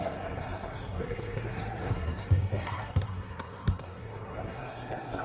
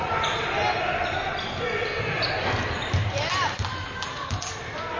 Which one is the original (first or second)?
second